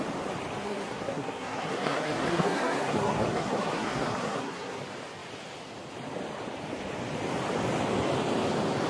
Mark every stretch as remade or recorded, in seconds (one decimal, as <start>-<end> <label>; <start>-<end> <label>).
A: 0.0-0.6 recorded; 0.6-4.8 remade; 4.8-8.9 recorded